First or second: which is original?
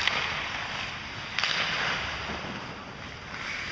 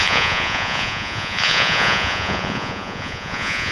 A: first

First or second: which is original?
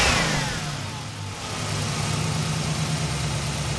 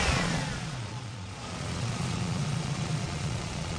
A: first